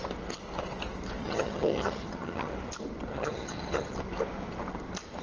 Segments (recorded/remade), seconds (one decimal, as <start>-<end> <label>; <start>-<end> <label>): 0.0-1.2 recorded; 1.2-2.5 remade; 2.5-3.1 recorded; 3.1-3.9 remade; 3.9-5.2 recorded